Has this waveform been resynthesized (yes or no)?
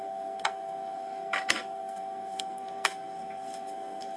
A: yes